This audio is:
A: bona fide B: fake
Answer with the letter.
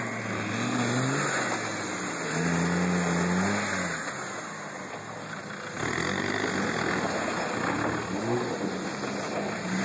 A